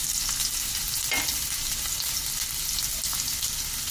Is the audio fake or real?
real